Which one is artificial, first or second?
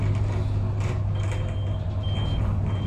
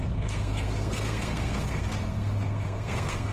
second